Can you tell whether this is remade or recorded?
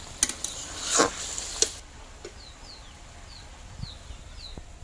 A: recorded